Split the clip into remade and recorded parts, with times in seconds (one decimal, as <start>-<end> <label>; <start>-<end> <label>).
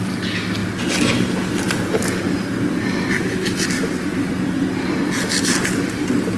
0.0-6.4 recorded